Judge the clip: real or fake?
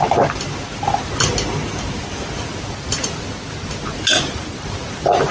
real